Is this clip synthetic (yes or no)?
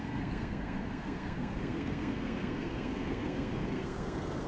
yes